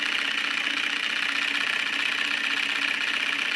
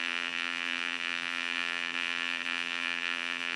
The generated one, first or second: second